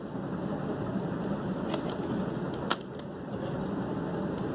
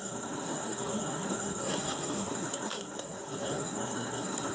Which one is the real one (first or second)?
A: first